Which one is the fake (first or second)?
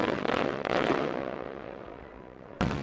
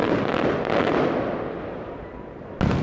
first